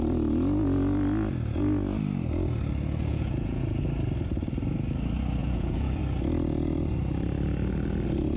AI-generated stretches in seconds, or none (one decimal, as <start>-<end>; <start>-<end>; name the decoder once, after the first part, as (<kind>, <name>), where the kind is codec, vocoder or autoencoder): 3.1-3.8 (vocoder, Vocos); 5.4-6.0